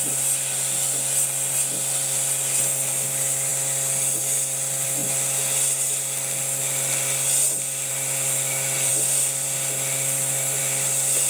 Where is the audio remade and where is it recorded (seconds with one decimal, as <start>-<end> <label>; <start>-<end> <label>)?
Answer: 0.0-11.3 recorded